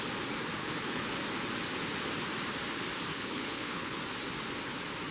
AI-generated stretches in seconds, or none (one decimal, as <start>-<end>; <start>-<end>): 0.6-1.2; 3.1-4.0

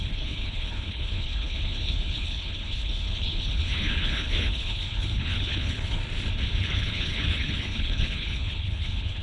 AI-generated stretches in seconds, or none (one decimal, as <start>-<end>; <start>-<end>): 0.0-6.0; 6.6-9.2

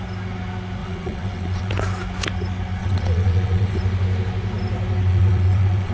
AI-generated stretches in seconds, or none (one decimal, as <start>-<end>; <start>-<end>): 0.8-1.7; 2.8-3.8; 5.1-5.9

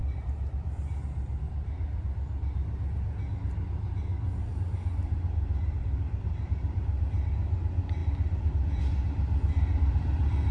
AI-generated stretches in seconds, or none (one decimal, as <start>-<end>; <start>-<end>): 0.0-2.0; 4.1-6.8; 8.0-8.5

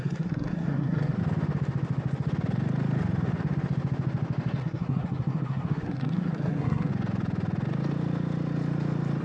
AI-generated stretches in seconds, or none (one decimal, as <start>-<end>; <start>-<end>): 0.0-1.2; 4.6-6.9

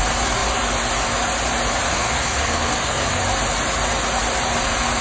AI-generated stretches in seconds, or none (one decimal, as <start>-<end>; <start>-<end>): 1.9-3.2

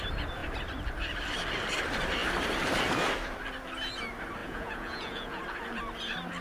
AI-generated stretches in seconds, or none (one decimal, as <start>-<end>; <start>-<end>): 4.4-5.4